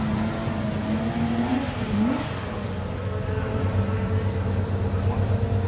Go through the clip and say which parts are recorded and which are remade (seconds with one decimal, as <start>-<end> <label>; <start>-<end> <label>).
0.0-5.7 recorded